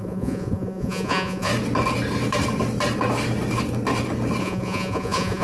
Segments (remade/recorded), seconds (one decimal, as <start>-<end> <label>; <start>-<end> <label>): 0.0-1.5 remade; 1.5-4.4 recorded; 4.4-5.4 remade